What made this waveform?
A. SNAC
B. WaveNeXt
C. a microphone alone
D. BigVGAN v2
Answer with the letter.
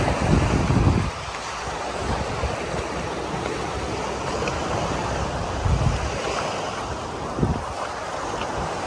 C